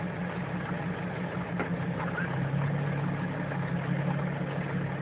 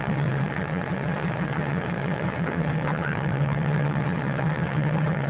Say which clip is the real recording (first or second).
first